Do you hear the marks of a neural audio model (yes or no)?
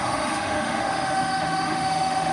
yes